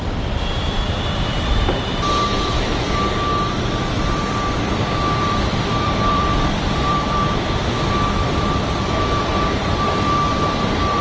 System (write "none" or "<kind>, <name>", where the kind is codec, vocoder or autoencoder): vocoder, BigVGAN v2